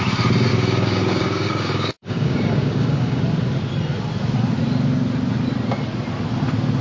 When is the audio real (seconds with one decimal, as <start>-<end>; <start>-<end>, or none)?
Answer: 0.0-0.5; 3.2-6.8